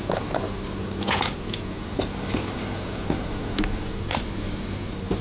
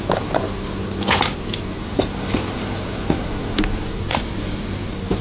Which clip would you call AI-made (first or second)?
second